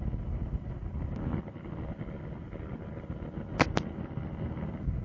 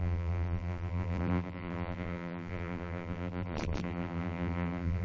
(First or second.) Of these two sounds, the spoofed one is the second